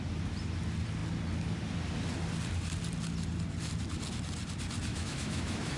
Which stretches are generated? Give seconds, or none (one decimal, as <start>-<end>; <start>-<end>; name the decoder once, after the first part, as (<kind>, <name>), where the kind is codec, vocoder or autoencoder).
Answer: 4.9-5.8 (autoencoder, DAC-VAE)

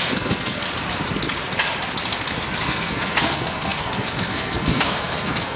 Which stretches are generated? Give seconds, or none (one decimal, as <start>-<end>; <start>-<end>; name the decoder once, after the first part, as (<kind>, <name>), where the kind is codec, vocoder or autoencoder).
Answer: 0.0-0.6 (codec, SNAC); 2.6-5.6

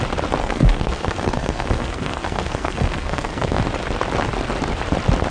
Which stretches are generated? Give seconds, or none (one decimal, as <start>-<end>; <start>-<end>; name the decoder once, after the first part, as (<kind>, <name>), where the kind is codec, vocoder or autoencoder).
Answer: 0.4-3.6 (codec, SNAC)

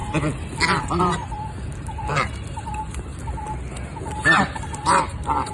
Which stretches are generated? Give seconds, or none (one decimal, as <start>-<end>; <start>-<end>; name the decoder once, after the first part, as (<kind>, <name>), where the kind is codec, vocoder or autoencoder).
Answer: 1.0-3.1 (vocoder, BigVGAN v2); 4.4-5.5

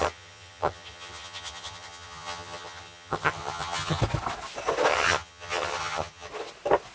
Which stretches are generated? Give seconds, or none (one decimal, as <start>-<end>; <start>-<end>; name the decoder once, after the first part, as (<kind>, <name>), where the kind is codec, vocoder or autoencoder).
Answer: 0.0-4.0 (vocoder, HiFi-GAN); 4.9-6.3

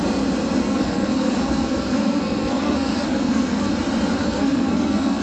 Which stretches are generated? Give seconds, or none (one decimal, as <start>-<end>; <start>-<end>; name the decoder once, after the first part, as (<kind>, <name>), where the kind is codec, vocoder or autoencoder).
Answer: 0.6-3.7 (codec, SNAC); 4.2-5.2

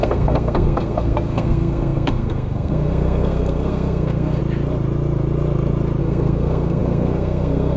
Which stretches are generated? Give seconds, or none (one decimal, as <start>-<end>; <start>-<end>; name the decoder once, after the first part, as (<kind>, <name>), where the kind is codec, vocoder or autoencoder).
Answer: 0.0-4.4 (codec, SNAC); 6.0-7.8